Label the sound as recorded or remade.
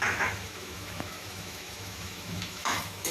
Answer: remade